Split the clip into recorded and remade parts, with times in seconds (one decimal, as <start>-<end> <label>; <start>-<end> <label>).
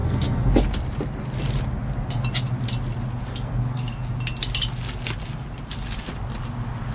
0.0-0.5 remade; 0.5-3.3 recorded; 3.3-3.9 remade; 3.9-6.9 recorded